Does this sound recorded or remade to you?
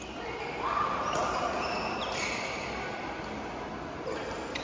recorded